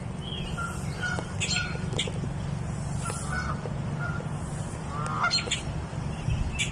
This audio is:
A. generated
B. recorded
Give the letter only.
B